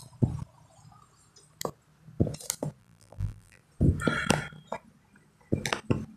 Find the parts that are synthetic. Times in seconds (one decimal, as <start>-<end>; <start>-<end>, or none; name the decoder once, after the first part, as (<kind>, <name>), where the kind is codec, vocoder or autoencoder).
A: 2.8-3.6 (vocoder, BigVGAN v2)